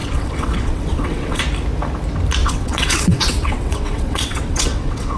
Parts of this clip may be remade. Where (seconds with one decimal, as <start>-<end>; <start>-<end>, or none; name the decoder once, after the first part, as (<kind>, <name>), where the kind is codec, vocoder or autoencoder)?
0.0-1.4 (vocoder, WaveNeXt); 2.4-5.2